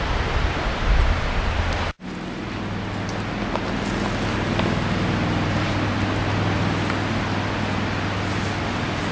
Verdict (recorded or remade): recorded